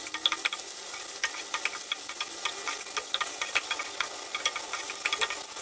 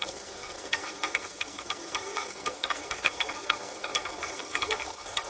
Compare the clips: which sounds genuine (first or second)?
first